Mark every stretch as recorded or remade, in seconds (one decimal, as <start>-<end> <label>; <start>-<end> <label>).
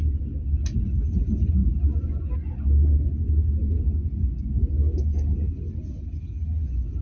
0.0-7.0 recorded